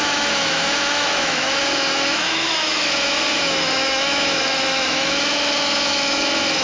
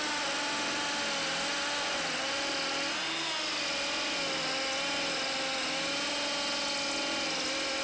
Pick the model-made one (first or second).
first